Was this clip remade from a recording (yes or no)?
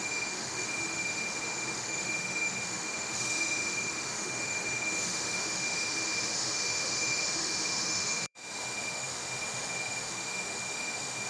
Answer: yes